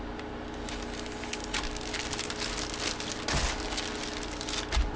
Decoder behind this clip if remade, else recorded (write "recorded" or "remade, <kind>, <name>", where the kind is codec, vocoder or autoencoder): recorded